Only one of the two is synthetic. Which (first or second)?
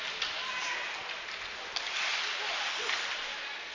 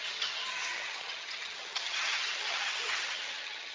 second